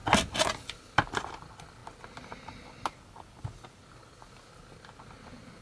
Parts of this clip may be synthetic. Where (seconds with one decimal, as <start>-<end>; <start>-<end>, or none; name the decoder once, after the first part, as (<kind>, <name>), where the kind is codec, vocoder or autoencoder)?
none